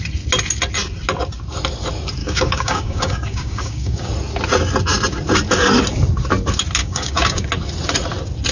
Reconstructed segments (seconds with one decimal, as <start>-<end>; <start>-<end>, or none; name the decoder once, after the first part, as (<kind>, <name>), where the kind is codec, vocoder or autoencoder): 2.2-4.1 (codec, DAC); 6.8-7.5